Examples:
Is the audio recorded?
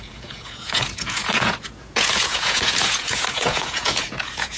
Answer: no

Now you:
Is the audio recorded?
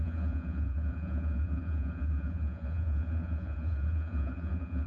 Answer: no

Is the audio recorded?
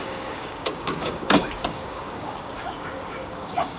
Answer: no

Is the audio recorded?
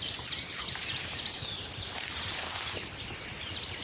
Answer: yes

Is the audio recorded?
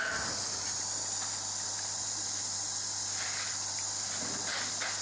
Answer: yes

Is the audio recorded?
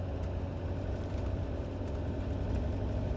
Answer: yes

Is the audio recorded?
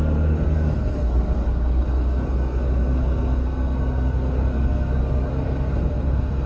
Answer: no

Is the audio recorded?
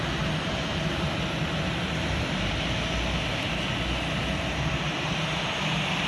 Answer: yes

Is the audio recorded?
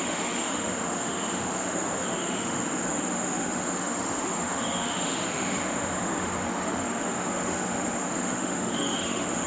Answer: no